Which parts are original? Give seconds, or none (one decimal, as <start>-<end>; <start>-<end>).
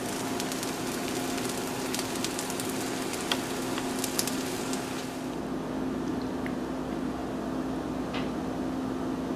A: 0.0-9.4